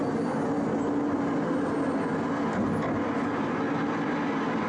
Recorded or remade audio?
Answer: recorded